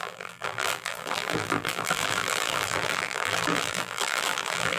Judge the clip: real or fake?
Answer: fake